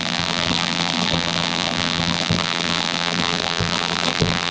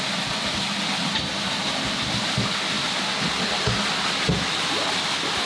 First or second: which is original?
second